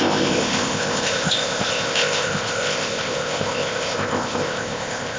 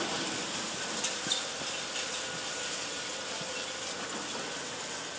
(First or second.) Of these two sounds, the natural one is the second